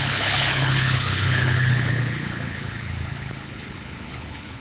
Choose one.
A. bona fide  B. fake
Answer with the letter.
B